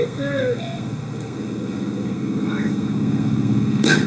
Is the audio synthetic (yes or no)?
yes